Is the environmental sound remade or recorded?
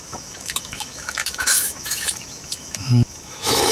remade